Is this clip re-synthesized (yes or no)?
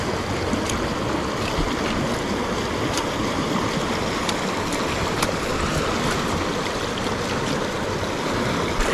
no